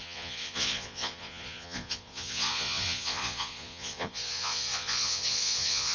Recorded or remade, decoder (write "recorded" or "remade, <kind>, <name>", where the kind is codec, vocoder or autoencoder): remade, vocoder, Vocos